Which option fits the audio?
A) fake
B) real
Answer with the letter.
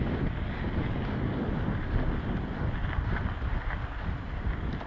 B